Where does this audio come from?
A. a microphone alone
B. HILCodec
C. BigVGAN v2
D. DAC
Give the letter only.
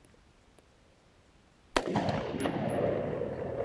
A